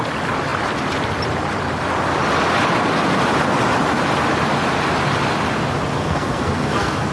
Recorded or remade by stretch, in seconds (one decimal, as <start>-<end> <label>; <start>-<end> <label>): 0.0-6.0 recorded; 6.0-7.1 remade